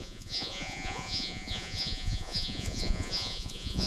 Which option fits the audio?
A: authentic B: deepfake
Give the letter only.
B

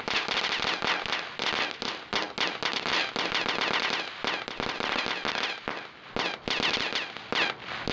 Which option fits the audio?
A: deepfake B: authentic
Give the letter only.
B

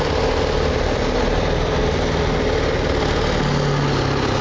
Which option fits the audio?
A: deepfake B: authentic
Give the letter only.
B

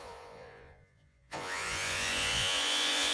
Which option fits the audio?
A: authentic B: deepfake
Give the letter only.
B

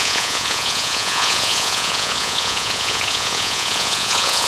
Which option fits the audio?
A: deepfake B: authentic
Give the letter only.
A